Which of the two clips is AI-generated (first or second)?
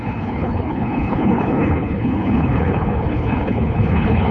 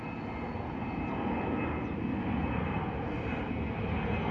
first